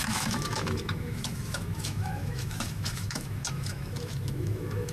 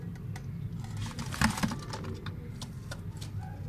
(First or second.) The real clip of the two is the second